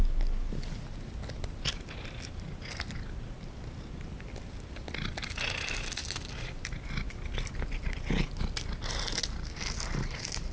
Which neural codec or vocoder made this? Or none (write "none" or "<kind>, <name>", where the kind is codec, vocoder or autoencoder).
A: none